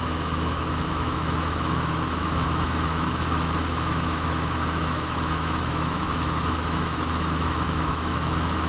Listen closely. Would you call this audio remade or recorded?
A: remade